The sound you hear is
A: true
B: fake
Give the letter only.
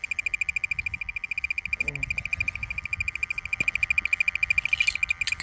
A